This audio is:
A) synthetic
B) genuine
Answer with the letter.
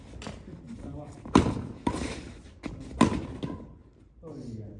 B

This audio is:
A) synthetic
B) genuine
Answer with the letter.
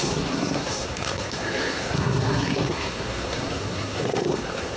A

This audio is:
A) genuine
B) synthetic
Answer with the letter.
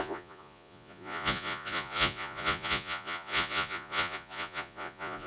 B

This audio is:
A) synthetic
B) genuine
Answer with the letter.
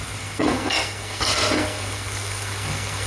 A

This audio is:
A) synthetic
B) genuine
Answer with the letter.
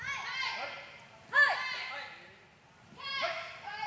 B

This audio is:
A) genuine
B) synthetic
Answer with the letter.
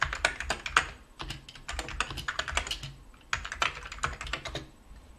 A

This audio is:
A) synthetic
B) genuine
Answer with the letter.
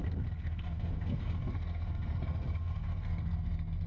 A